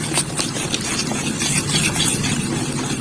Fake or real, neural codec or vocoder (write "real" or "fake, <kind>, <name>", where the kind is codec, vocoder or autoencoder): real